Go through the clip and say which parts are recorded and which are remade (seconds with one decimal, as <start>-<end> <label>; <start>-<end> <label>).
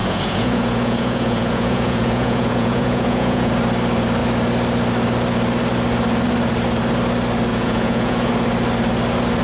0.0-3.5 remade; 3.5-7.5 recorded; 7.5-8.3 remade; 8.3-9.4 recorded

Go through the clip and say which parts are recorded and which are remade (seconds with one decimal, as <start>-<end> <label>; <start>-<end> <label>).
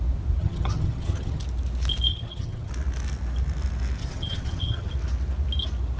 0.0-0.4 recorded; 0.4-1.4 remade; 1.4-2.1 recorded; 2.1-2.7 remade; 2.7-4.0 recorded; 4.0-4.9 remade; 4.9-6.0 recorded